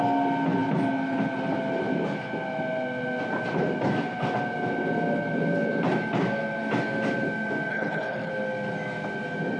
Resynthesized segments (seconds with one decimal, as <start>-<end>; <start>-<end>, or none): 7.7-8.3